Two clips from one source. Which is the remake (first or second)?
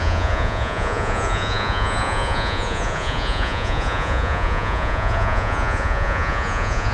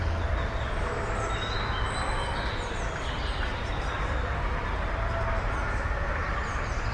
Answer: first